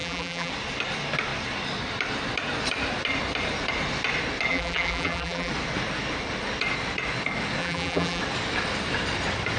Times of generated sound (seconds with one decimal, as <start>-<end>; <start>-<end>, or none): 0.0-0.5; 4.5-5.5; 7.6-8.2